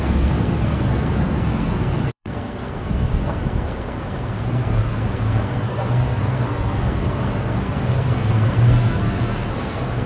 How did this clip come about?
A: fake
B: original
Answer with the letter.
A